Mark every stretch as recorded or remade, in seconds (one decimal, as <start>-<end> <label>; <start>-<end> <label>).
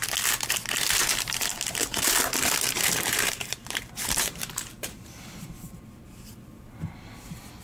0.0-1.0 recorded; 1.0-1.9 remade; 1.9-2.7 recorded; 2.7-7.6 remade